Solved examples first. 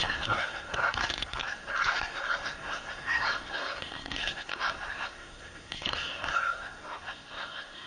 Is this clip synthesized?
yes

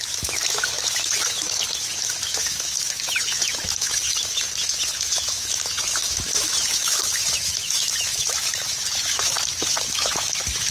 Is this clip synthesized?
yes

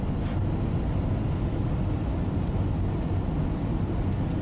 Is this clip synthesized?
no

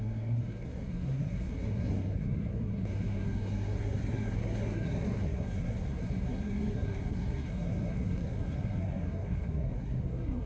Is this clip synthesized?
yes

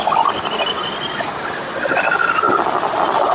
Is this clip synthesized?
no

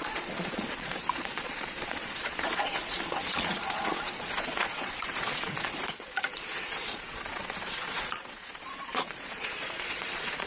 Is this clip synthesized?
yes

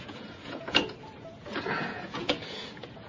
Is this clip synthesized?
yes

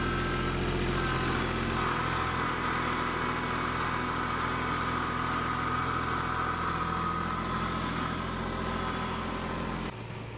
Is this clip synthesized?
no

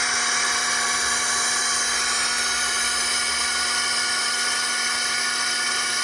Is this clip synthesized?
no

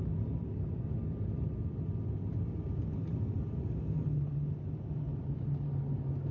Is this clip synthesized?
no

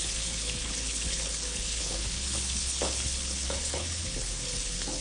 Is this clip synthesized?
yes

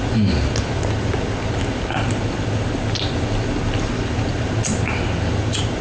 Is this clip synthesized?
no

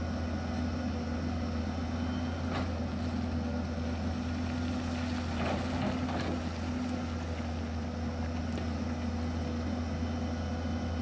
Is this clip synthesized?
no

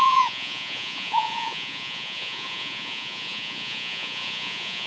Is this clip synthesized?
yes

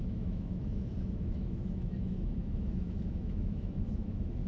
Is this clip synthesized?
yes